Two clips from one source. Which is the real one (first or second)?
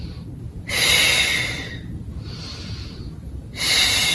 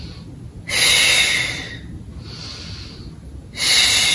second